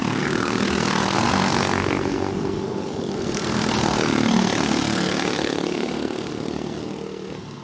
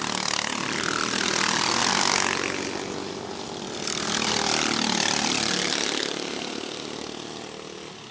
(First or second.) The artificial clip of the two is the first